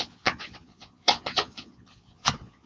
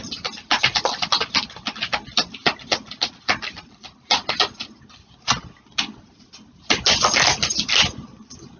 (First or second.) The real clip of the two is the second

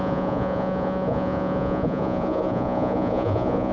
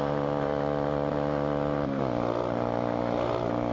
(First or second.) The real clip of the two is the second